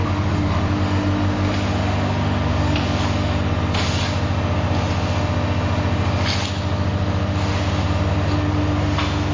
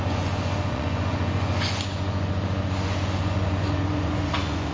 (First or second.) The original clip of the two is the first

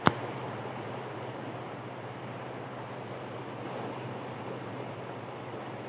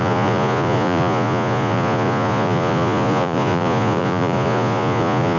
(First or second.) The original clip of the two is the first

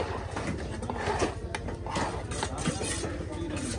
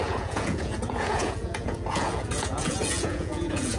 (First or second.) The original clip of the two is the first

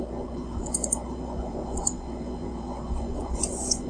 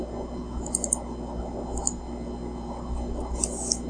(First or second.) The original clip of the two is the second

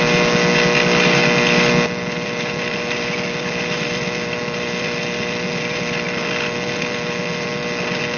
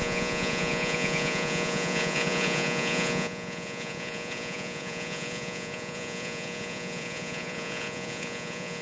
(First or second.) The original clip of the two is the first